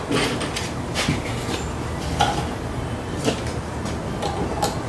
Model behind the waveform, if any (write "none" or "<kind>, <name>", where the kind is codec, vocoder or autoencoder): none